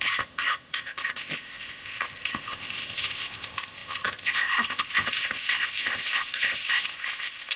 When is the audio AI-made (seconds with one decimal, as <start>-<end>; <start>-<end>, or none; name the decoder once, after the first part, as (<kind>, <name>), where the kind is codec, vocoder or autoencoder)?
0.0-7.6 (codec, ZipCodec)